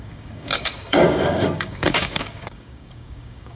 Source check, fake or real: fake